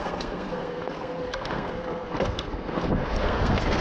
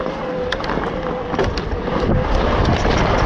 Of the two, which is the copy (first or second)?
first